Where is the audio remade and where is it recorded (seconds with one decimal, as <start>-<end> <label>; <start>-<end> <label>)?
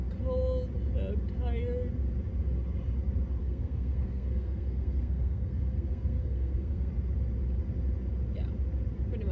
0.0-3.4 recorded; 3.4-6.9 remade; 6.9-9.3 recorded